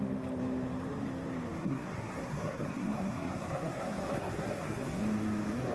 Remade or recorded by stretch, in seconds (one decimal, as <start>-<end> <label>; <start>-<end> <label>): 0.0-1.6 recorded; 1.6-5.0 remade; 5.0-5.7 recorded